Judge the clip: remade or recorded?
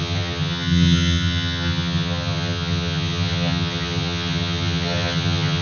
remade